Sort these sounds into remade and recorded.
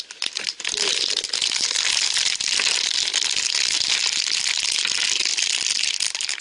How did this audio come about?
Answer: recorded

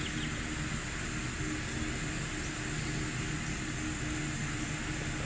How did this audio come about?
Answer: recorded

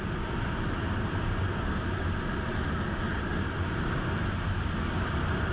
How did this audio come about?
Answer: recorded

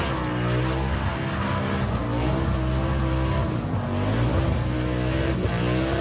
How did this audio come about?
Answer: recorded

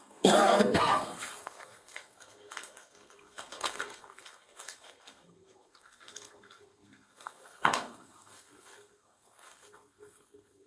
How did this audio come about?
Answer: remade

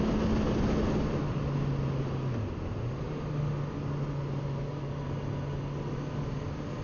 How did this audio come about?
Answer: recorded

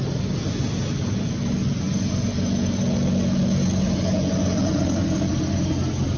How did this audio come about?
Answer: recorded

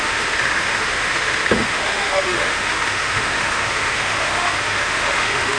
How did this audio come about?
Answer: remade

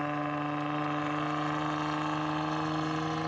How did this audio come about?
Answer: recorded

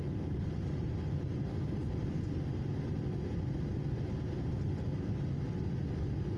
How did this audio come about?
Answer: recorded